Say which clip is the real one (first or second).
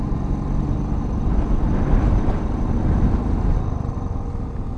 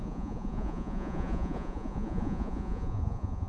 first